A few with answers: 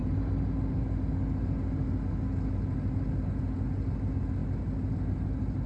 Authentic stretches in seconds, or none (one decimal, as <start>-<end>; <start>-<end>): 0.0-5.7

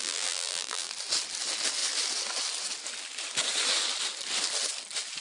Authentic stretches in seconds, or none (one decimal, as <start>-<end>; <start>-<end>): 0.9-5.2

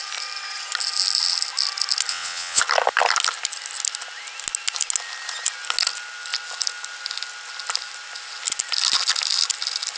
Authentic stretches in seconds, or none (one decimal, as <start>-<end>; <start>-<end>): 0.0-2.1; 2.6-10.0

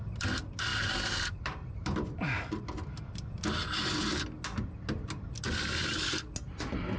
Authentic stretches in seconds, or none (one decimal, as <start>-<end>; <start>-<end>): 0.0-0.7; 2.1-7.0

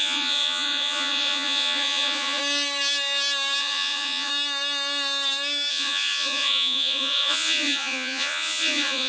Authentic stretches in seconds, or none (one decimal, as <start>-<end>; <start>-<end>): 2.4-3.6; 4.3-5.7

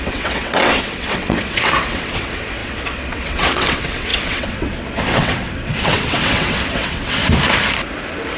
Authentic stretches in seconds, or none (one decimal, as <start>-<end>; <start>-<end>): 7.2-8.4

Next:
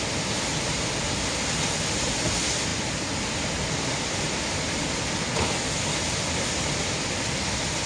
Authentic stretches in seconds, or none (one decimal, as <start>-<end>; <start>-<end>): 0.0-7.9